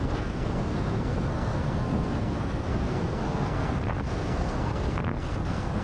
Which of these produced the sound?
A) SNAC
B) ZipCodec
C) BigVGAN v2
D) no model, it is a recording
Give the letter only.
A